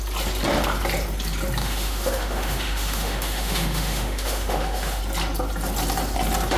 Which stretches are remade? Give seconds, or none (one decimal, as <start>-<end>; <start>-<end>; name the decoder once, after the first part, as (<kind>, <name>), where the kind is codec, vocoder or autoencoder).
1.6-5.0 (autoencoder, DAC-VAE)